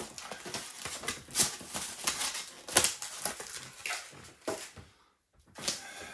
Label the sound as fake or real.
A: real